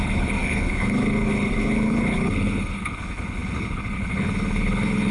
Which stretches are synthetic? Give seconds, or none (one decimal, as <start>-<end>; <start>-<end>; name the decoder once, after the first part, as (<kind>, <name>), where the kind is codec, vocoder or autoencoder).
0.0-5.1 (codec, HILCodec)